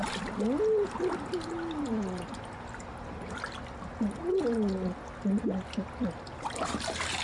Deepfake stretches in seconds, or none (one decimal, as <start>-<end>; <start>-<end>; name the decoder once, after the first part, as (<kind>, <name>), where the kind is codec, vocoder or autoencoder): none